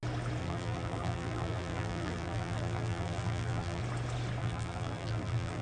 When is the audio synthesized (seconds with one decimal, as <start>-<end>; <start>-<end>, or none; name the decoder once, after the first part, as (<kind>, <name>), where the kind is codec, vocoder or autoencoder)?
0.4-3.8 (vocoder, BigVGAN v2); 4.4-5.6